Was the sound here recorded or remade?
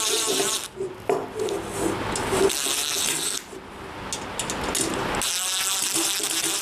recorded